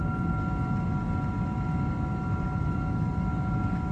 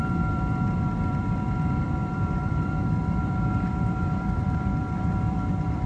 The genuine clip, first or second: first